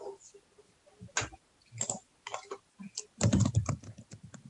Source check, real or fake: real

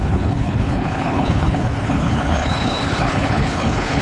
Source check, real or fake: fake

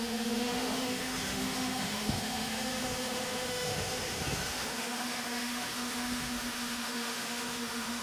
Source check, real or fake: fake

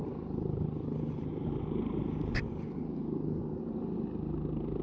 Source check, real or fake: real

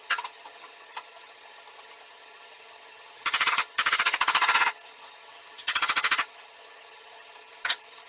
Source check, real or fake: fake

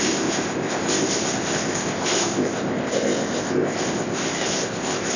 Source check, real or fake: fake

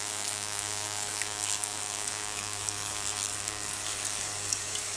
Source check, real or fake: fake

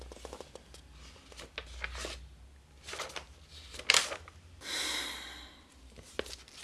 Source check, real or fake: real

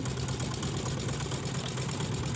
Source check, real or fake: real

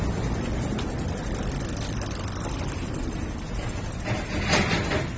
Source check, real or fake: real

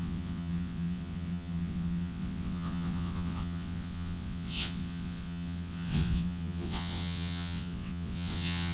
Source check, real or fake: fake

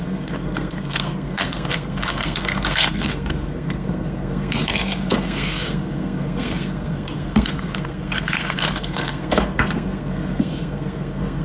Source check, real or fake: fake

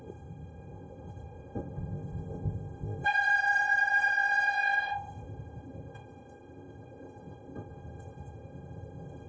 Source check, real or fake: fake